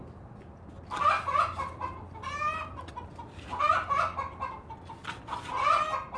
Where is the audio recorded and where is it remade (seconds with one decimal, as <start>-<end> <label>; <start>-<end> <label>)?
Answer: 0.0-6.2 recorded